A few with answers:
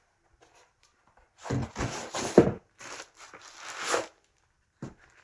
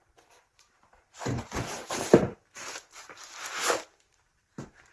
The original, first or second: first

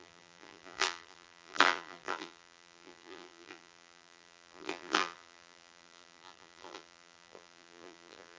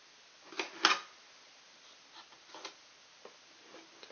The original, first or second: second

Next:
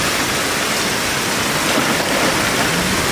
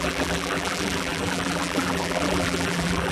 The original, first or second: first